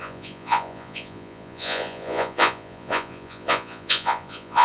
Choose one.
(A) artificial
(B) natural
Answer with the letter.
A